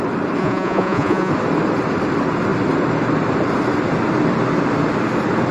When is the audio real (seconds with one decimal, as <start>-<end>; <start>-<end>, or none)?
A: 0.0-0.4; 1.3-5.5

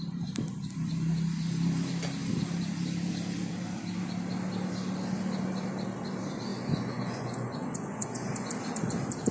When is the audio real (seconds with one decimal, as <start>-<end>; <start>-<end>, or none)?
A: 0.0-6.5; 8.5-9.3

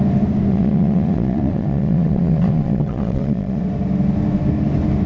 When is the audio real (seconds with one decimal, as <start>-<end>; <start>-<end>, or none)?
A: 0.0-0.5; 3.6-5.1

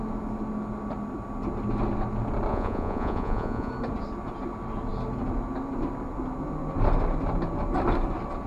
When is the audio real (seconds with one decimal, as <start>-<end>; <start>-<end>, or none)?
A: 0.0-2.5; 3.7-8.5

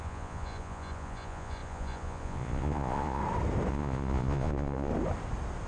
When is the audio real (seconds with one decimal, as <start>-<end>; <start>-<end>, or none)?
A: 3.2-3.7; 4.9-5.7

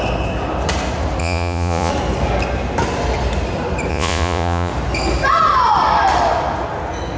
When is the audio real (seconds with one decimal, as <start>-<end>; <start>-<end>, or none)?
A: 0.0-1.2; 1.9-3.9; 4.7-7.2

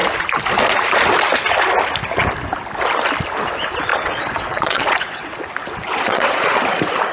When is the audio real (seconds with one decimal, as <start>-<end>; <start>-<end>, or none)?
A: 0.0-3.9; 5.3-5.9; 6.6-7.1